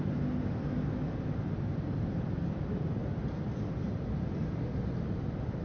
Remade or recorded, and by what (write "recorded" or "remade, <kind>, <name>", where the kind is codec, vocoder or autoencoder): recorded